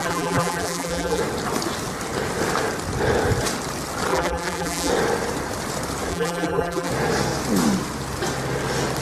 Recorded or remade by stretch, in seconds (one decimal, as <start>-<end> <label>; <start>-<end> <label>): 0.0-1.2 remade; 1.2-4.1 recorded; 4.1-4.9 remade; 4.9-6.1 recorded; 6.1-6.9 remade; 6.9-9.0 recorded